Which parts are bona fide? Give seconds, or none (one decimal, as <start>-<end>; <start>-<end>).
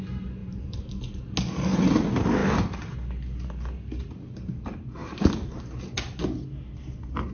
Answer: 0.0-0.4; 1.0-5.0; 5.6-7.3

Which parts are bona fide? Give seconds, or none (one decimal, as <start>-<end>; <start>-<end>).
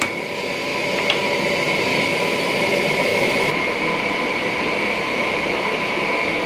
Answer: 0.0-3.1; 4.4-5.1; 6.0-6.5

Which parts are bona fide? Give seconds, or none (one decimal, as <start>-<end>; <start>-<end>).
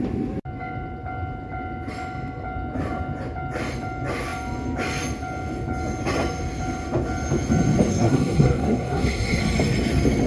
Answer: 0.0-7.9; 9.4-10.3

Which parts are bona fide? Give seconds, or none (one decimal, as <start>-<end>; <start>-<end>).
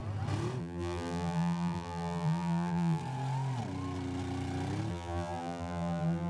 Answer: 0.0-0.6; 3.0-4.9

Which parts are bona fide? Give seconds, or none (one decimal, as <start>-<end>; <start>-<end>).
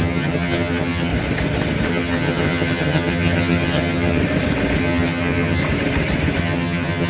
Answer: 1.1-1.9; 4.2-4.8; 5.6-6.4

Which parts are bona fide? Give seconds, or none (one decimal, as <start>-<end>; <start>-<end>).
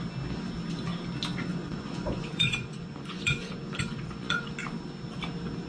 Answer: 0.0-1.5; 4.5-5.7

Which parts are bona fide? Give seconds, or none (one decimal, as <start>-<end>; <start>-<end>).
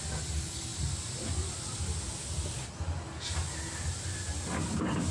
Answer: 0.0-5.1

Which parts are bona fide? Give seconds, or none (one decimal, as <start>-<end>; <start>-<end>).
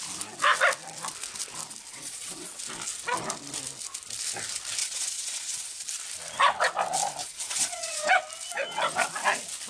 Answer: 0.0-1.9; 2.6-4.8; 5.8-7.2; 8.1-9.7